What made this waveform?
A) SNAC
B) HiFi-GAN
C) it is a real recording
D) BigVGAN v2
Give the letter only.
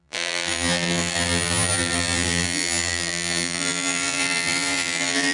D